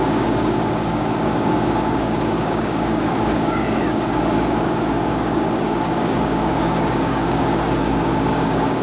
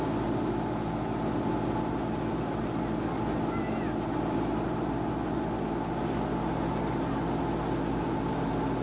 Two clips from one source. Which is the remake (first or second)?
first